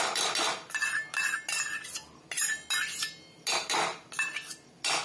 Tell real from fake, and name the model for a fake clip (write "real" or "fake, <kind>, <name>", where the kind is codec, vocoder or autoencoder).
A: real